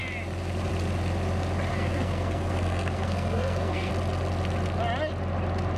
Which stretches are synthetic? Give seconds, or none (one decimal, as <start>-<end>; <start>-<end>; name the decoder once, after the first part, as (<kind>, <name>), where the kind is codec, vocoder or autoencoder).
1.7-3.9 (codec, SNAC)